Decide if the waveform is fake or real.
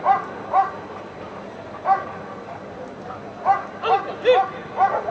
real